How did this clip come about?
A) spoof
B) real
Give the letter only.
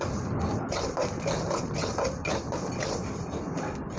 B